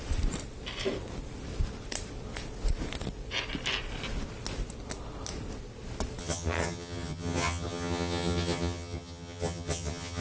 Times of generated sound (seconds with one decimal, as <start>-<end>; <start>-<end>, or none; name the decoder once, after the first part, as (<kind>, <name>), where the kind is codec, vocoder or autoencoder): 6.2-10.2 (vocoder, HiFi-GAN)